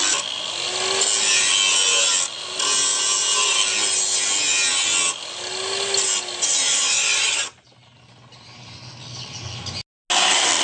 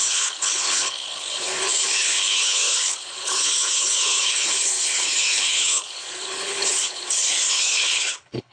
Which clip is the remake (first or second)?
second